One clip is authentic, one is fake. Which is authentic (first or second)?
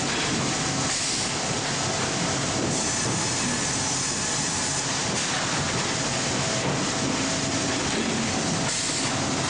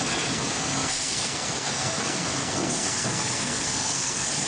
first